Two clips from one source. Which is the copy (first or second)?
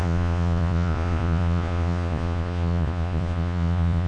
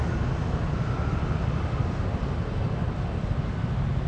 first